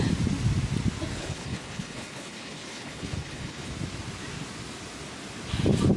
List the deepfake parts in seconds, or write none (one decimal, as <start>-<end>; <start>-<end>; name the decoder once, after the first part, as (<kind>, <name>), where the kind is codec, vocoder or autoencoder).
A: 1.1-3.7 (codec, HILCodec)